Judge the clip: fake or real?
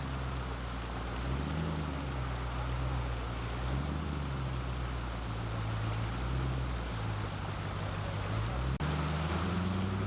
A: real